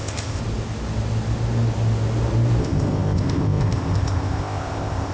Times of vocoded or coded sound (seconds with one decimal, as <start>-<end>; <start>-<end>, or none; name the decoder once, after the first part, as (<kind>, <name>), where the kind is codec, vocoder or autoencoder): 0.0-0.4 (codec, ZipCodec); 2.6-5.1